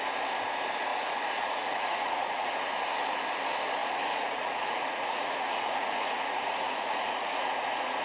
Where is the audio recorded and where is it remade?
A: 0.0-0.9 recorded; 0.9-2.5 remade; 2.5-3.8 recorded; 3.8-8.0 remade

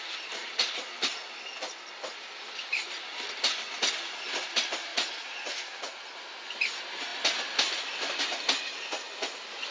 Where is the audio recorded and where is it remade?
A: 0.0-4.9 recorded; 4.9-6.0 remade; 6.0-9.7 recorded

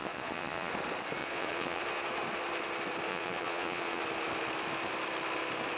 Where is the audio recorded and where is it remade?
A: 0.0-0.7 remade; 0.7-1.2 recorded; 1.2-1.8 remade; 1.8-3.1 recorded; 3.1-4.0 remade; 4.0-5.8 recorded

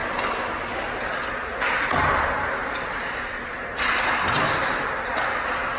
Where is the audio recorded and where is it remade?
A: 0.0-5.8 recorded

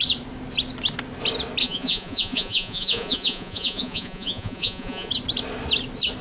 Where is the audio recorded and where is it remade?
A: 0.0-1.6 recorded; 1.6-5.1 remade; 5.1-6.2 recorded

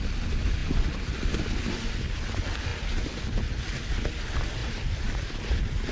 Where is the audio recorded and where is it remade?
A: 0.0-5.9 recorded

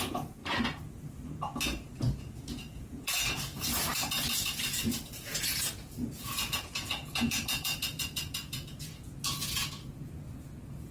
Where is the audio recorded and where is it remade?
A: 0.0-0.4 remade; 0.4-2.2 recorded; 2.2-10.9 remade

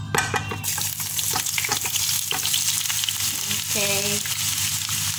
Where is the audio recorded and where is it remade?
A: 0.0-5.2 recorded